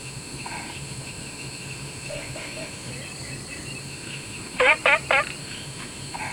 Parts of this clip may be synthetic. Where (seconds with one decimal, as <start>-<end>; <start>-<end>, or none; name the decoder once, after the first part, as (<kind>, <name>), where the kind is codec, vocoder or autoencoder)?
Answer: 0.0-2.9 (autoencoder, DAC-VAE); 3.8-4.7; 5.4-6.3